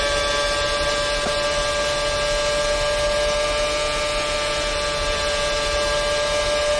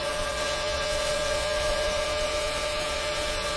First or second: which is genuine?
first